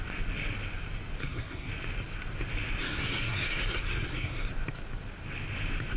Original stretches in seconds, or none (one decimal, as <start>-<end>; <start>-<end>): 0.0-1.2; 1.7-2.8; 4.5-6.0